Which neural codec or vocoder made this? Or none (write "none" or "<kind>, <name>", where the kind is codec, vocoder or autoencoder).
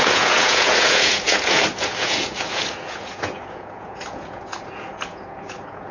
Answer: vocoder, Vocos